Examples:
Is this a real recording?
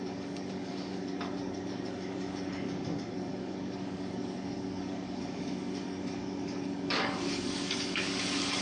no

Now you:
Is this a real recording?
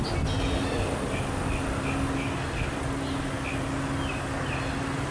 yes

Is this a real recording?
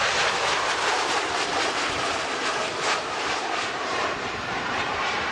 no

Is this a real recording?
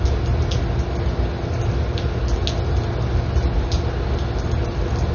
yes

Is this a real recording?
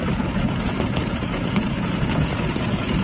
no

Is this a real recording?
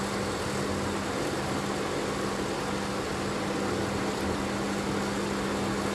yes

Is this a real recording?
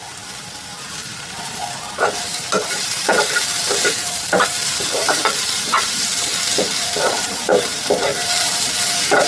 no